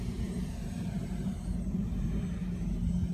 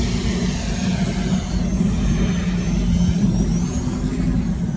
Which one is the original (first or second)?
second